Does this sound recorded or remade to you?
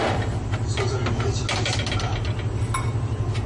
recorded